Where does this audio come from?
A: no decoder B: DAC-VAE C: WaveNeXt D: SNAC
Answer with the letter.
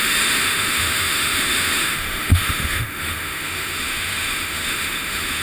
B